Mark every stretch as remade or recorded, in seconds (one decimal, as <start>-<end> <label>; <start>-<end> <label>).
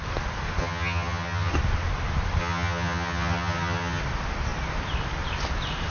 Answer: 0.0-0.6 recorded; 0.6-1.5 remade; 1.5-2.4 recorded; 2.4-4.0 remade; 4.0-5.9 recorded